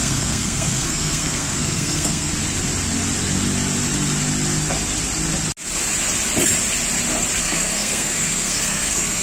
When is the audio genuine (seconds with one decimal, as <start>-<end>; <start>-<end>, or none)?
2.3-7.4